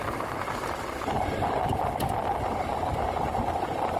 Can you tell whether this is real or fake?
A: real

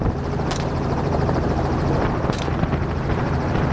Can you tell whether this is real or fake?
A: fake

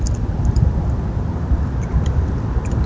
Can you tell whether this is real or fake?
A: real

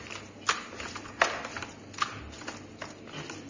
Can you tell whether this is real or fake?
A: real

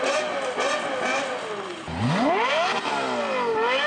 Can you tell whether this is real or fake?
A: real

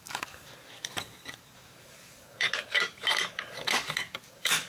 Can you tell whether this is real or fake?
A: fake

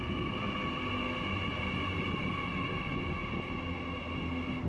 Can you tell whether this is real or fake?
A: real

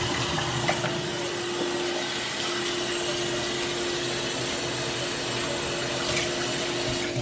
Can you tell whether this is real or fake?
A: real